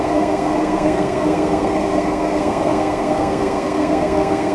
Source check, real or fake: fake